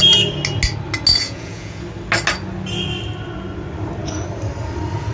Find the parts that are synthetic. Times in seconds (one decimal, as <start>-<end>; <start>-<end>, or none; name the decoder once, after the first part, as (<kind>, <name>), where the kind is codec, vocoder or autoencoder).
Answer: 1.1-1.8 (vocoder, Vocos)